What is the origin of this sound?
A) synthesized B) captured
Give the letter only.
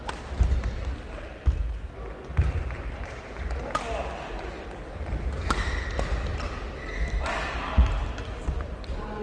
B